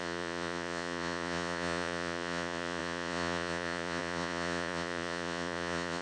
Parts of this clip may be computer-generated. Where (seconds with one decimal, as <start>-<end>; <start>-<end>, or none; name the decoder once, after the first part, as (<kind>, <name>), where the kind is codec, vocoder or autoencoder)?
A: 0.0-6.0 (vocoder, Vocos)